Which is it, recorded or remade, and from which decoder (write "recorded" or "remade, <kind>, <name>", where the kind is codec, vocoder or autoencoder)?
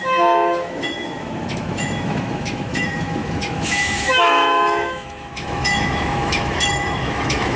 remade, autoencoder, DAC-VAE